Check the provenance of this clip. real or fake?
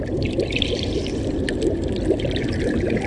fake